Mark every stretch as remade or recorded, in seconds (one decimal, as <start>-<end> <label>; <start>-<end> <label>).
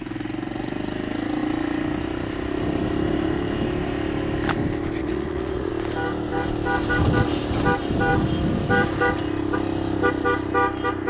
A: 0.0-5.0 recorded; 5.0-5.7 remade; 5.7-11.1 recorded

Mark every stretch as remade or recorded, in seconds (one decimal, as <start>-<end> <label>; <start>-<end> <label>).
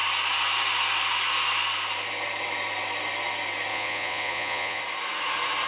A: 0.0-3.7 recorded; 3.7-4.8 remade; 4.8-5.7 recorded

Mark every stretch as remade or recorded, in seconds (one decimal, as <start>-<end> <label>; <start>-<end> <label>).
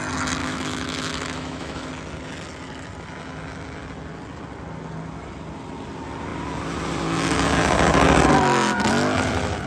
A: 0.0-0.4 recorded; 0.4-1.9 remade; 1.9-9.7 recorded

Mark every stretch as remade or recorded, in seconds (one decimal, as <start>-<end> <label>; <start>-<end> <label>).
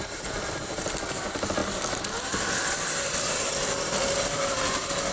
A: 0.0-0.9 remade; 0.9-1.6 recorded; 1.6-4.5 remade; 4.5-5.1 recorded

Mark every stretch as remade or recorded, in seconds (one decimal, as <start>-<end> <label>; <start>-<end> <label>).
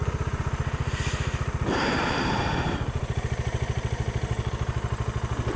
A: 0.0-0.9 remade; 0.9-1.8 recorded; 1.8-4.5 remade; 4.5-5.6 recorded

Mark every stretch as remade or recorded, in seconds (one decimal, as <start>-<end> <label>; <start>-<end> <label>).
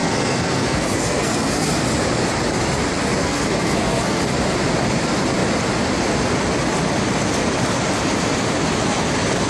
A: 0.0-1.7 remade; 1.7-3.2 recorded; 3.2-4.2 remade; 4.2-9.5 recorded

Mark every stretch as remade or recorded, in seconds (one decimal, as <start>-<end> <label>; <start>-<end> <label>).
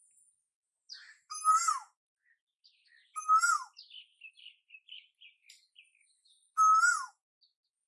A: 0.0-7.9 recorded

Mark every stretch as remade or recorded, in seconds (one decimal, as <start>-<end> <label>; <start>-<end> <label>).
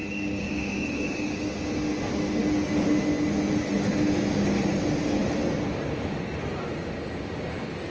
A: 0.0-1.5 remade; 1.5-7.9 recorded